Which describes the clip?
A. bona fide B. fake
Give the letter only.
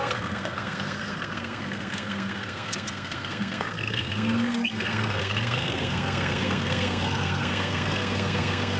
B